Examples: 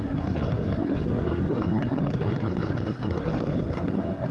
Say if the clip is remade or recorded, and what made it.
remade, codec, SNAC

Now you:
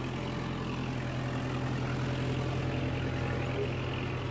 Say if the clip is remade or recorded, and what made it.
recorded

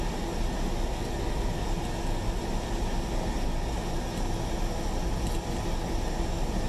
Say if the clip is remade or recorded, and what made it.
recorded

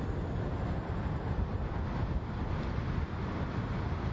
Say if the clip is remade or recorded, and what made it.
recorded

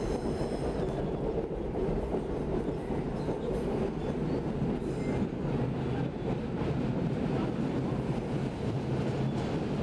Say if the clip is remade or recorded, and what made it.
recorded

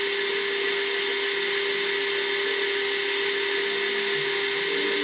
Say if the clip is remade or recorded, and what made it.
recorded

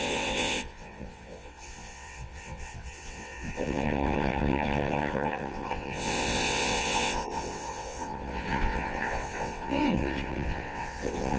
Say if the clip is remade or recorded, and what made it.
remade, vocoder, WaveNeXt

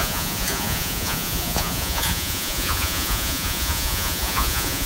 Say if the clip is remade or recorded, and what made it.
remade, vocoder, Vocos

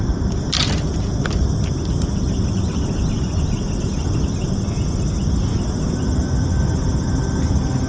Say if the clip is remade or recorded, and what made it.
recorded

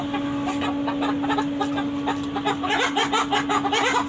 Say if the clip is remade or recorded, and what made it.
recorded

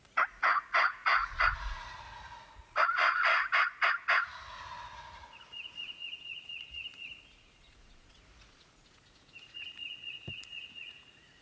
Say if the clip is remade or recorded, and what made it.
remade, vocoder, Vocos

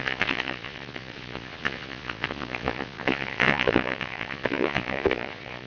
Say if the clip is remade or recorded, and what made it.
remade, vocoder, Vocos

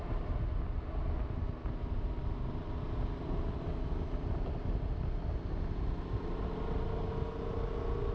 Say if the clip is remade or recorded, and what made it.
recorded